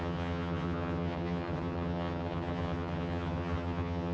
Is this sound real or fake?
fake